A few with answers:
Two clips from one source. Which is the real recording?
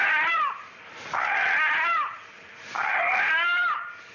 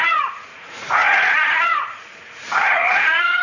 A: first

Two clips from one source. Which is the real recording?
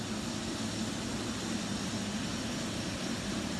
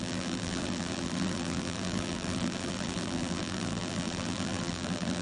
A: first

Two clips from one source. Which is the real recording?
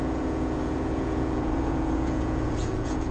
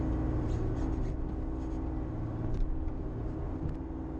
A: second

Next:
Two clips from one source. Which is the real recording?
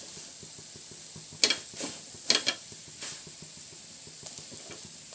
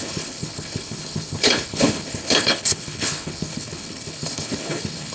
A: first